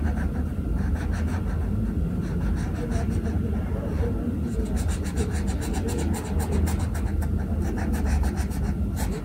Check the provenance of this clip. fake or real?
real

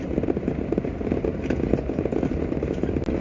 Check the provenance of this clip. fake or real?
real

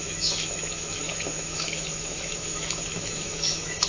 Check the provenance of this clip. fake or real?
fake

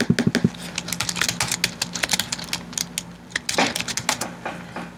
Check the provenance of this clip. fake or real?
real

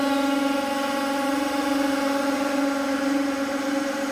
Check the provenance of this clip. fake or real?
fake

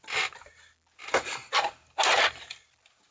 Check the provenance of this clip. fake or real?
real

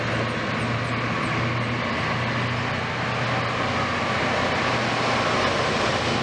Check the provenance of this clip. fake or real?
real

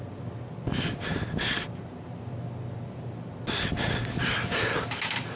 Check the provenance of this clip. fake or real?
real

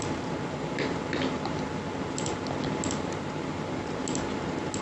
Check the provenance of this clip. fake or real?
real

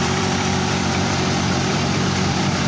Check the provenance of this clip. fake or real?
fake